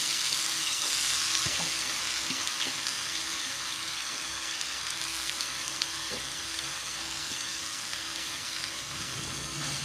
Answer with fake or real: fake